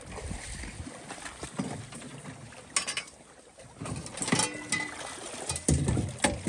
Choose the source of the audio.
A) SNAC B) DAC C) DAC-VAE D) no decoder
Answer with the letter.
D